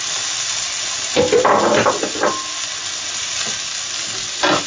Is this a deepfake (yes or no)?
no